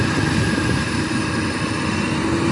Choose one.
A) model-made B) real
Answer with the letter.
B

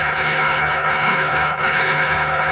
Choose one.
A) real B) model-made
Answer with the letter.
B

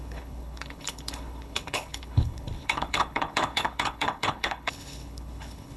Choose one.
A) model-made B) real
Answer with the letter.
A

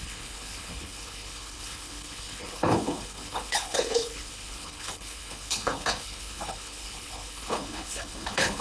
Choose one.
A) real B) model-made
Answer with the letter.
B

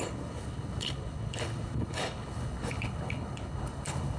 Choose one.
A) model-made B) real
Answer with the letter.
A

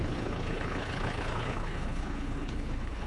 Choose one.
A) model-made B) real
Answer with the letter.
A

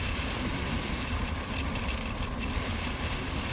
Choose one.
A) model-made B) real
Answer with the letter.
B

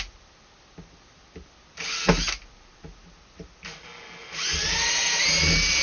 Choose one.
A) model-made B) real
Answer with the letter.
B